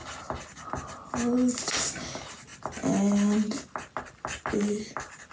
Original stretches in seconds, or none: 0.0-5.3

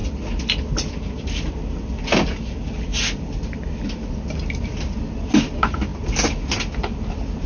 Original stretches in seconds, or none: 0.0-7.5

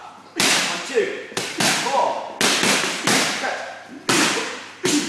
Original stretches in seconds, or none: 0.0-5.1

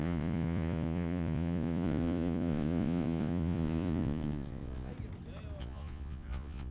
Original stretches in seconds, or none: 4.9-5.6

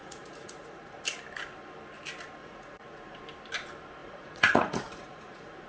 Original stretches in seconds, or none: 1.0-2.4; 3.2-4.0